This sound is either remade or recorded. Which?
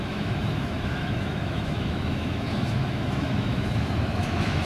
remade